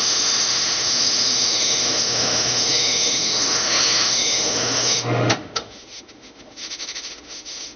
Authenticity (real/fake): fake